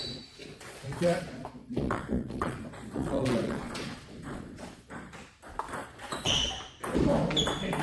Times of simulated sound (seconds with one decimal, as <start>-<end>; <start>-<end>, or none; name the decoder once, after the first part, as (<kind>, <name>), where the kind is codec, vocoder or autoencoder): 0.4-5.1 (vocoder, Vocos); 5.8-6.5